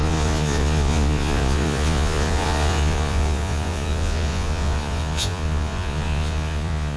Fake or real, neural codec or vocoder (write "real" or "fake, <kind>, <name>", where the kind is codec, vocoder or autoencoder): fake, vocoder, Vocos